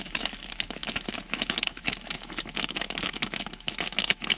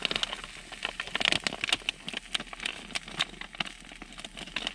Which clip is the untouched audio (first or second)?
second